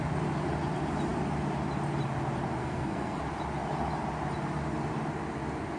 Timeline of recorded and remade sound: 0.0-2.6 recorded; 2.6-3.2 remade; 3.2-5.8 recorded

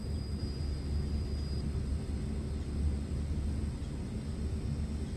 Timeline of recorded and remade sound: 0.0-5.2 recorded

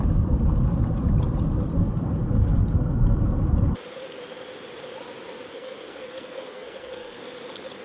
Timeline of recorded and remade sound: 0.0-5.5 recorded; 5.5-7.2 remade; 7.2-7.8 recorded